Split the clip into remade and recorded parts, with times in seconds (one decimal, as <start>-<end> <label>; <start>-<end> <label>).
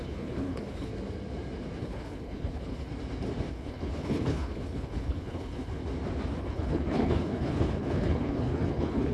0.0-0.9 remade; 0.9-1.8 recorded; 1.8-2.9 remade; 2.9-3.5 recorded; 3.5-5.8 remade; 5.8-6.4 recorded; 6.4-9.1 remade